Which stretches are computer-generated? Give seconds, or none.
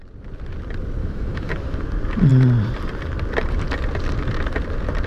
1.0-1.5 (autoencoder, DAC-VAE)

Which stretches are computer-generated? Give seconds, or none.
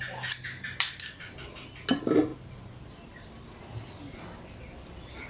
none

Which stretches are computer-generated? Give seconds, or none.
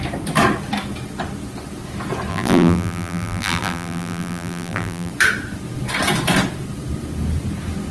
2.3-5.1 (vocoder, BigVGAN v2)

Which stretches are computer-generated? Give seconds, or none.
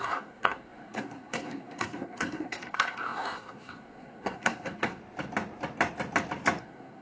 0.0-5.0 (codec, SNAC); 6.6-7.0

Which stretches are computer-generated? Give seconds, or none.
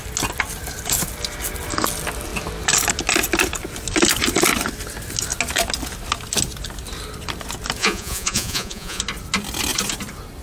7.8-9.0 (vocoder, Vocos)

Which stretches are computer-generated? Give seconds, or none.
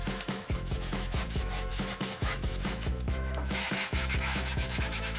0.0-5.2 (autoencoder, DAC-VAE)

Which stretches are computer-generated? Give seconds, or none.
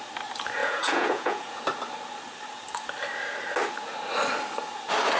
0.6-1.6 (vocoder, Vocos)